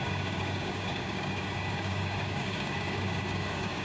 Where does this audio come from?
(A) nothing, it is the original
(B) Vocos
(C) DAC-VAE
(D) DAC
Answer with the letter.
D